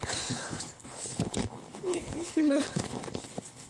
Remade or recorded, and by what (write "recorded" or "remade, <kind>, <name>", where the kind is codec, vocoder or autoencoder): remade, codec, HILCodec